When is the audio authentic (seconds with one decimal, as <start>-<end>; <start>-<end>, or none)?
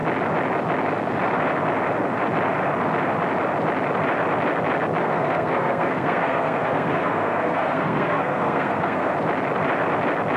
0.0-5.0; 9.1-10.4